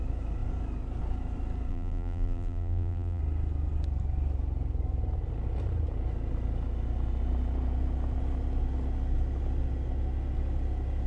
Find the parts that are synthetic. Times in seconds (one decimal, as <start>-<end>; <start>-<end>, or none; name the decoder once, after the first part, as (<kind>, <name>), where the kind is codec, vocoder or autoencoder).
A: 1.7-3.2 (vocoder, BigVGAN v2)